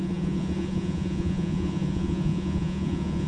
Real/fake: fake